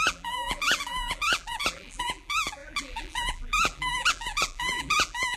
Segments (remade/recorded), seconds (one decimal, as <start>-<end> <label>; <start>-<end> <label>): 0.0-5.4 remade